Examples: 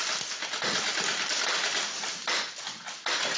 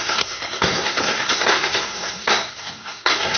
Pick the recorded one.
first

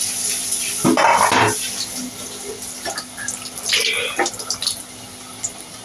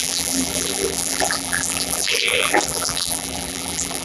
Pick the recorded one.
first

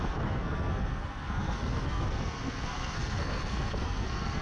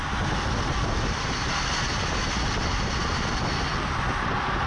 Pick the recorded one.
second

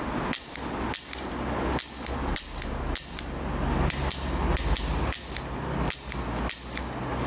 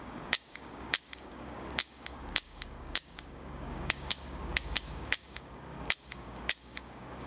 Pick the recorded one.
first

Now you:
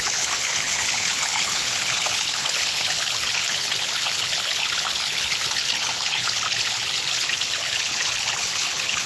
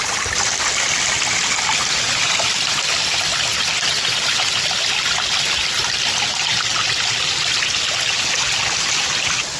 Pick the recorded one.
second